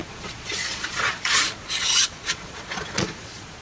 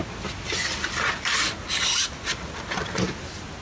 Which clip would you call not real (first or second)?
first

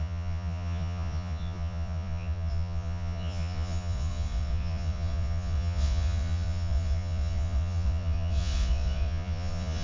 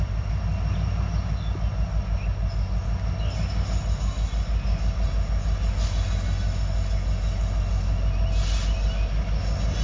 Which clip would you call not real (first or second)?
first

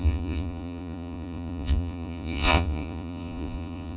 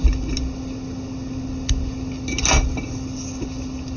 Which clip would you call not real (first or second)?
first